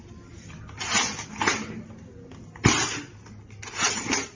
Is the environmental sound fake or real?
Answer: real